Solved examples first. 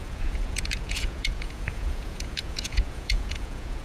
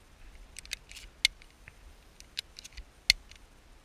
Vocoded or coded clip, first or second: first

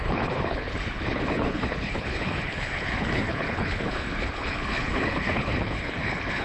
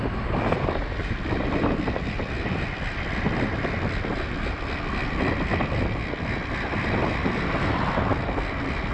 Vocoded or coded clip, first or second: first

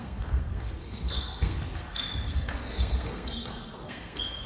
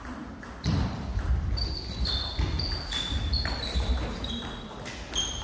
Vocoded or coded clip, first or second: first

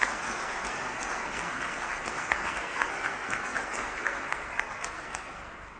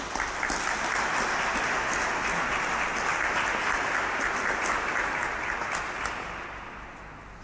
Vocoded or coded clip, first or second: first